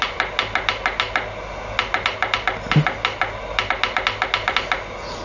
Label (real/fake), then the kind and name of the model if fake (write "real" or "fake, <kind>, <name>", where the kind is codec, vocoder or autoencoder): real